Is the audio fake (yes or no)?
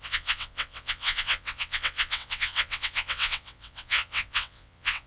yes